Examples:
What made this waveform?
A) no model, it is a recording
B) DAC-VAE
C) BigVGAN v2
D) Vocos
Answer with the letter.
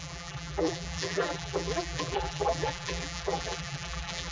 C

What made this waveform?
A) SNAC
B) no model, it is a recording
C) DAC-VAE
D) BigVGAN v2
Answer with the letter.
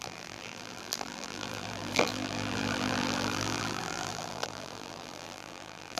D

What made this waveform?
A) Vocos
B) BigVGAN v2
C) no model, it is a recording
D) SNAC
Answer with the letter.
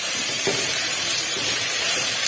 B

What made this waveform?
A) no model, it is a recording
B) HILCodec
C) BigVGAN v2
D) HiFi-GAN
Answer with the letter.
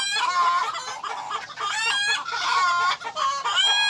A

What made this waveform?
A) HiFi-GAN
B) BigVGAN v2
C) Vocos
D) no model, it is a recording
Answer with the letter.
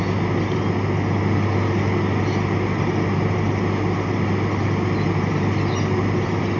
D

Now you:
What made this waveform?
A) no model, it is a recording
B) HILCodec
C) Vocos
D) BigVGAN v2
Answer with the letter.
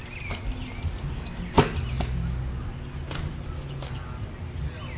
A